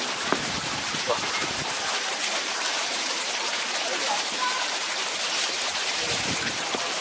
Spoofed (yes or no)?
yes